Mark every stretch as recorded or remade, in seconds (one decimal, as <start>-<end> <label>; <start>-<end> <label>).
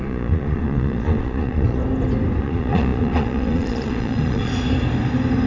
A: 0.0-1.8 remade; 1.8-2.4 recorded; 2.4-4.5 remade; 4.5-5.5 recorded